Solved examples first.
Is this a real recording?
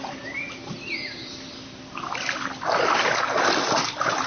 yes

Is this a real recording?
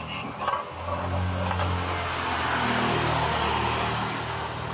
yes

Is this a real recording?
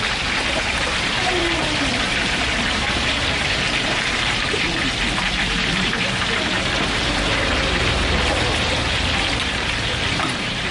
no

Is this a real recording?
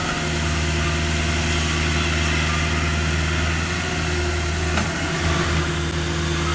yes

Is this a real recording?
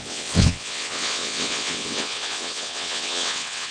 no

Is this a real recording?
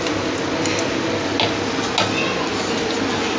yes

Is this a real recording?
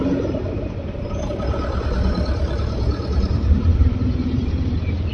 no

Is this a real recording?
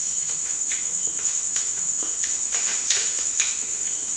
no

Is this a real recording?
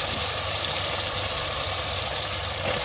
no